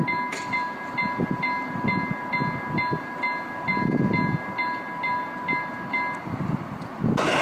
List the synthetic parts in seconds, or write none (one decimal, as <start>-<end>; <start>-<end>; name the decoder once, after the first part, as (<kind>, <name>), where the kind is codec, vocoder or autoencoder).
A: none